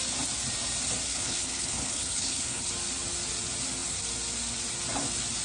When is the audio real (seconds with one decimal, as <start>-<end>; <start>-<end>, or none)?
0.0-1.1; 2.7-5.4